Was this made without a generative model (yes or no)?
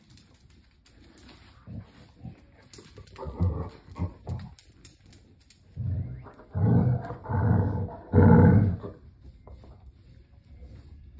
yes